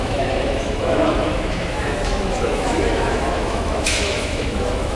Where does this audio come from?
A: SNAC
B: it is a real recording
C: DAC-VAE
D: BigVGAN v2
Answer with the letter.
C